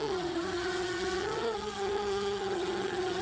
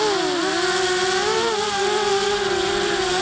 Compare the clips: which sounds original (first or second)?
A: second